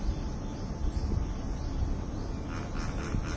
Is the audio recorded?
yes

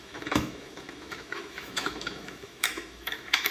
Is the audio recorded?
no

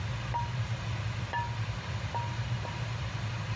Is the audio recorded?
yes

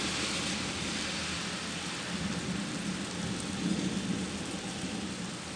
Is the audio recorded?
yes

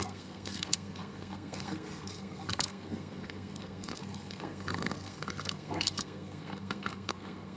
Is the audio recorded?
no